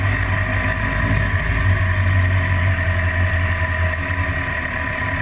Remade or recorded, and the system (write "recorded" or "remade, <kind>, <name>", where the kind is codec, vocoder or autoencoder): recorded